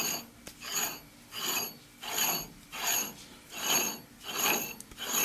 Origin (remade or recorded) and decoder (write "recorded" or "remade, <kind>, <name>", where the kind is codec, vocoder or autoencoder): recorded